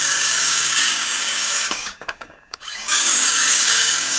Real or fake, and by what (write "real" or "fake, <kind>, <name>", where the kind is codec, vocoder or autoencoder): fake, codec, DAC